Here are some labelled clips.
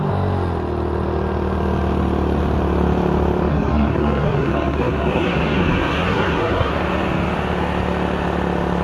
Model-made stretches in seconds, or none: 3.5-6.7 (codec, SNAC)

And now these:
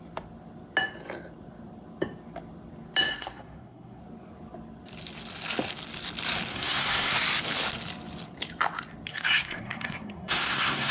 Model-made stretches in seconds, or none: 3.1-4.0 (codec, SNAC); 6.5-7.1; 9.1-10.9

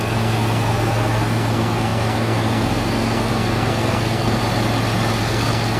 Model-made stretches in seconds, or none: 0.0-4.4 (codec, SNAC); 5.2-5.8

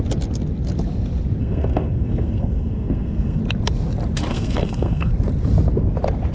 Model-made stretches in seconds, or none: 1.4-3.4 (codec, SNAC); 4.3-5.1

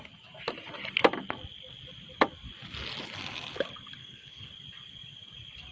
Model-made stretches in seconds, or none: 4.0-4.5 (codec, SNAC)

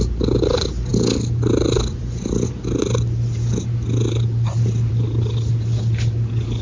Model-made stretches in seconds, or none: none